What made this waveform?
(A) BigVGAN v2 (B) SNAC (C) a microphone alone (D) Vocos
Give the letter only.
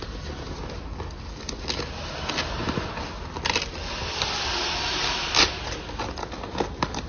C